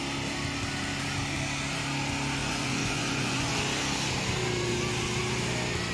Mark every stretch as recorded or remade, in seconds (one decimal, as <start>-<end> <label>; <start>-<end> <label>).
0.0-2.4 recorded; 2.4-3.6 remade; 3.6-5.9 recorded